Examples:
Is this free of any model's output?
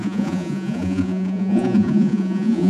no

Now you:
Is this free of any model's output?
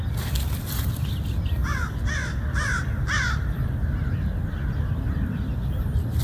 yes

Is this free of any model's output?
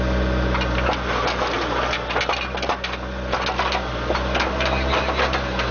yes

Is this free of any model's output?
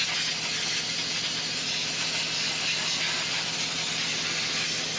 yes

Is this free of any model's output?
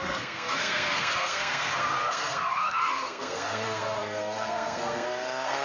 no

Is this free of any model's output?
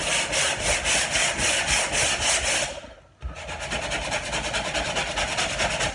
yes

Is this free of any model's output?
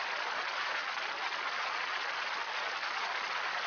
yes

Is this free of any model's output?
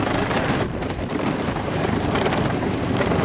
no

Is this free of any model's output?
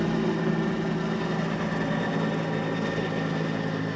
yes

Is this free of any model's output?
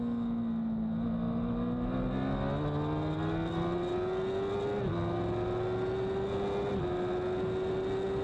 yes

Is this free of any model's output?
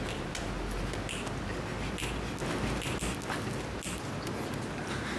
yes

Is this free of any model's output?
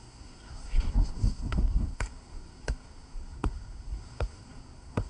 no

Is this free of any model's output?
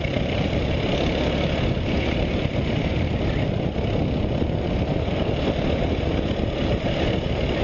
no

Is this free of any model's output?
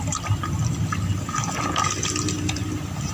yes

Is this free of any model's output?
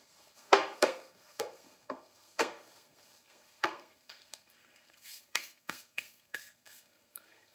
no